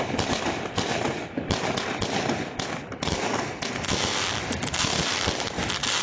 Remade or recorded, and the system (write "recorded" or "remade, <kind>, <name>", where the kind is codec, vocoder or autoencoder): recorded